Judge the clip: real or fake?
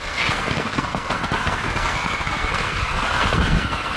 fake